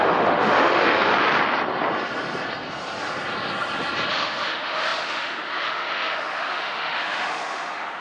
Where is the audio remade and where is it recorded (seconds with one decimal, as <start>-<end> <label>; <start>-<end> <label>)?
0.0-1.1 remade; 1.1-4.1 recorded; 4.1-8.0 remade